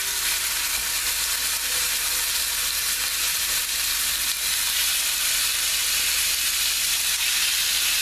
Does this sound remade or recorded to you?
recorded